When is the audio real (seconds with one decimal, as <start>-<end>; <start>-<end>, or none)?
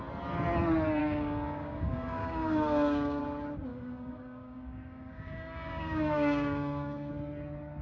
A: 0.0-1.0; 3.2-3.7; 7.1-7.8